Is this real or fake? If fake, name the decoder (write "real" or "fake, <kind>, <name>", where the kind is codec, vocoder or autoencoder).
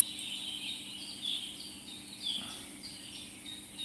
real